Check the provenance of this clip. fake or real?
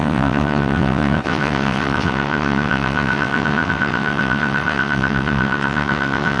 fake